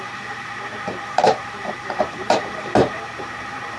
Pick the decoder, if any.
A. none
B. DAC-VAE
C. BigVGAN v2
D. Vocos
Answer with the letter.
C